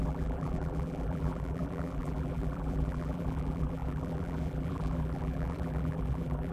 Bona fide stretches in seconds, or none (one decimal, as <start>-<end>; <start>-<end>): none